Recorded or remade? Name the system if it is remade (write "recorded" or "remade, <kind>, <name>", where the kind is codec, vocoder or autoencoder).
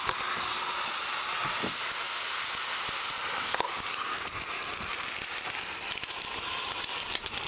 recorded